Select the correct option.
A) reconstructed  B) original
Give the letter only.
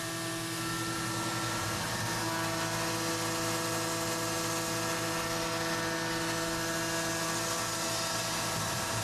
B